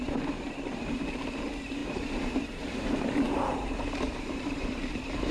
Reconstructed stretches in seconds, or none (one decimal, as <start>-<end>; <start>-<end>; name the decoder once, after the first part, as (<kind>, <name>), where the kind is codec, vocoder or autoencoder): 1.8-5.3 (vocoder, BigVGAN v2)